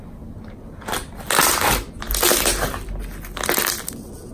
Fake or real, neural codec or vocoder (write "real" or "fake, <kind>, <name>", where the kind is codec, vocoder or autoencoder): real